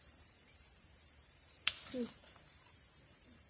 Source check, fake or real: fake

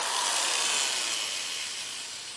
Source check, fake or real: real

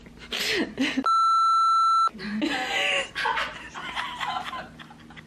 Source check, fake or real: real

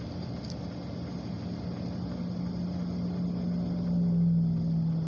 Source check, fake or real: real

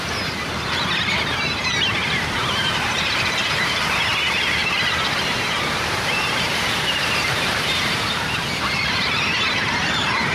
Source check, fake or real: fake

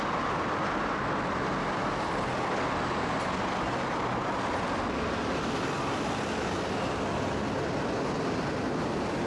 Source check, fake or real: real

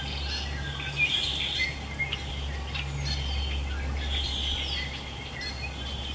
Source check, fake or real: real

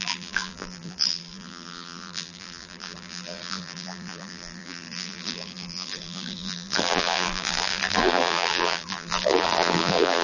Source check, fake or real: fake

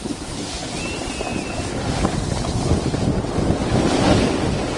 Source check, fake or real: real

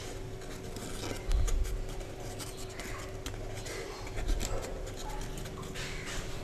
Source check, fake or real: real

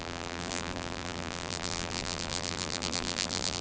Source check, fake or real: fake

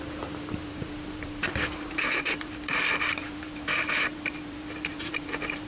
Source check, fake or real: fake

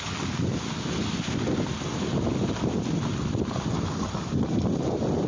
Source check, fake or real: real